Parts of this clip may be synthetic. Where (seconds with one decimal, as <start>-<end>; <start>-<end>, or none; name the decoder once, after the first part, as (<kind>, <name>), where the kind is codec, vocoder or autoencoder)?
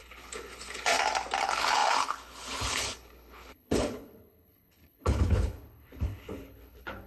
0.0-0.9 (codec, HILCodec); 1.4-7.1